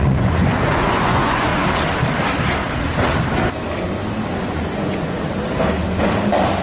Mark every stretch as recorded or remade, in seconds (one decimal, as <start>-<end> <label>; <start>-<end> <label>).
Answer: 0.0-1.5 remade; 1.5-4.4 recorded; 4.4-5.3 remade; 5.3-6.6 recorded